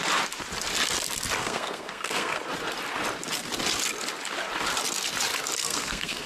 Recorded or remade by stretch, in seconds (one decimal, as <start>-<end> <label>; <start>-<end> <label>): 0.0-1.4 recorded; 1.4-2.4 remade; 2.4-5.6 recorded; 5.6-6.3 remade